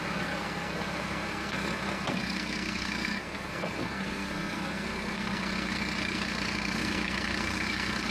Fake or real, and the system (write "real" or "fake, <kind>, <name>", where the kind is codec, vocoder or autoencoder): fake, codec, SNAC